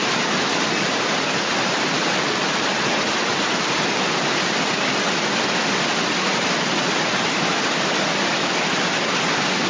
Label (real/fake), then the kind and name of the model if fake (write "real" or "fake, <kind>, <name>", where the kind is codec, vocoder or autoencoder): real